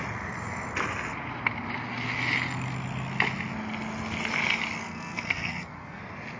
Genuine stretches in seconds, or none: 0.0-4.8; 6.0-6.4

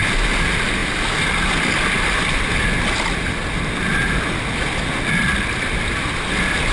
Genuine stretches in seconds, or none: 0.0-6.7

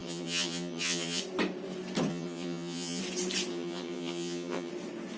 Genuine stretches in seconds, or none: 1.2-2.1; 3.0-3.5; 4.7-5.2

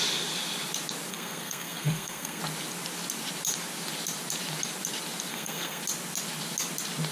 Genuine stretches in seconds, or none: 0.0-1.1; 2.4-5.3; 5.8-7.1

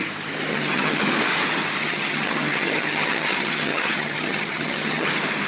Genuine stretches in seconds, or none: 0.0-0.5; 1.0-1.8; 5.1-5.5

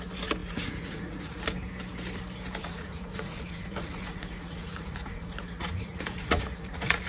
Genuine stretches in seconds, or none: 0.0-0.4; 1.4-2.6

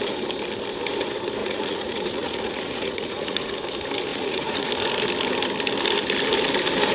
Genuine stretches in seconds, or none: 0.0-1.4; 3.5-4.1; 4.7-6.9

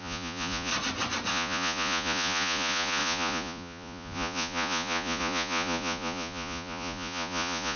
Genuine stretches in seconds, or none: 0.7-1.3